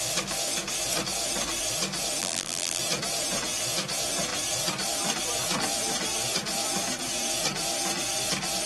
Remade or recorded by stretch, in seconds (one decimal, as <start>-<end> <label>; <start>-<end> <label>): 0.0-2.2 recorded; 2.2-2.8 remade; 2.8-8.7 recorded